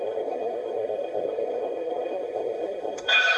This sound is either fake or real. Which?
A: fake